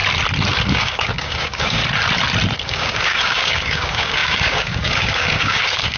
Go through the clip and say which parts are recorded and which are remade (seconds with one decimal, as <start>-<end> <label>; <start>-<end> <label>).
0.0-0.7 recorded; 0.7-1.8 remade; 1.8-2.6 recorded; 2.6-6.0 remade